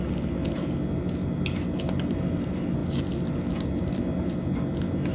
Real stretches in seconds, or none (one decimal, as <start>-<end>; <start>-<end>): 0.0-5.1